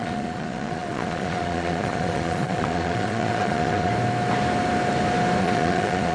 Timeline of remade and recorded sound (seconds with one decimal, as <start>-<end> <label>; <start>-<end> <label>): 0.0-3.9 remade; 3.9-5.4 recorded; 5.4-6.1 remade